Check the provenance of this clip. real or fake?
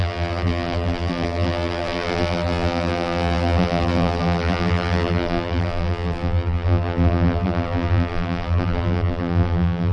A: fake